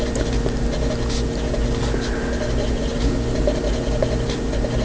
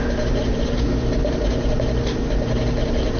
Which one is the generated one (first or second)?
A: second